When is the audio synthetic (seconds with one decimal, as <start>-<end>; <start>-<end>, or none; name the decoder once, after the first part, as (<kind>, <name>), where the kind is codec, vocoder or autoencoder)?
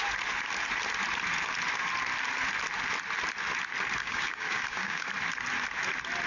4.0-5.1 (codec, DAC)